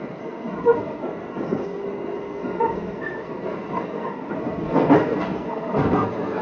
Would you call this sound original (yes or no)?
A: no